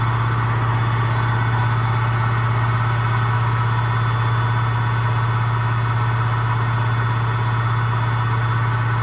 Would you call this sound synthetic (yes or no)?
no